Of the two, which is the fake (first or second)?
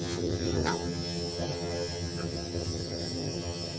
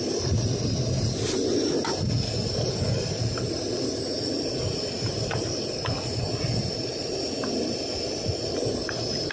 first